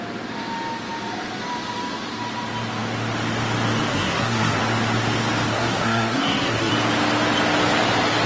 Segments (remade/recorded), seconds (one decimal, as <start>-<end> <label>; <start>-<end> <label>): 0.0-3.9 recorded; 3.9-4.6 remade; 4.6-5.5 recorded; 5.5-6.7 remade; 6.7-8.3 recorded

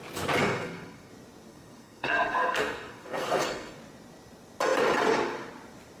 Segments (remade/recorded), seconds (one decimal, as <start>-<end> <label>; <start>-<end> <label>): 0.0-0.4 recorded; 0.4-1.1 remade; 1.1-1.5 recorded; 1.5-3.8 remade; 3.8-6.0 recorded

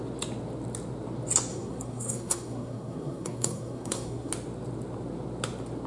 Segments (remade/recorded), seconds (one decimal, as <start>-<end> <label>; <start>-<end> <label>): 0.0-1.5 recorded; 1.5-4.3 remade; 4.3-5.9 recorded